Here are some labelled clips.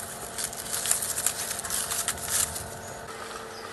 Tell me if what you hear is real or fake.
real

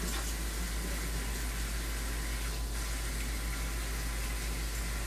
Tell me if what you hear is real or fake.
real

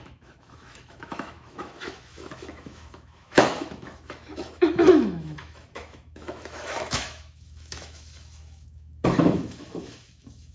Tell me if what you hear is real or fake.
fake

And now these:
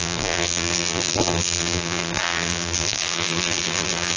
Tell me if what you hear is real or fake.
fake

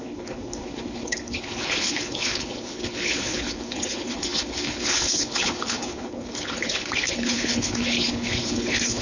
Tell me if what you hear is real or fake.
fake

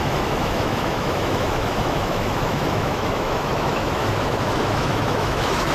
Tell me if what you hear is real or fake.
fake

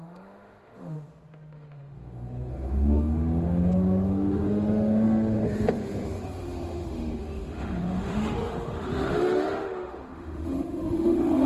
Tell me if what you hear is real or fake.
fake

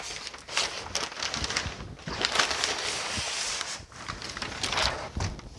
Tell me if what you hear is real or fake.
real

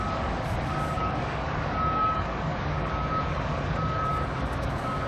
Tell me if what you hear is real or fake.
fake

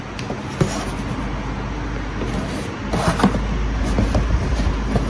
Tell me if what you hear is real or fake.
real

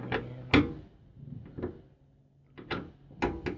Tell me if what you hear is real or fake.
real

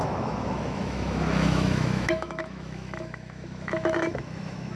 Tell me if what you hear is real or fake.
fake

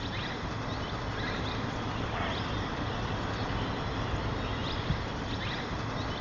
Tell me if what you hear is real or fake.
real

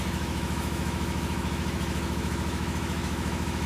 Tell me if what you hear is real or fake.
fake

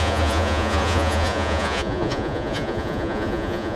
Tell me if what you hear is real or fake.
fake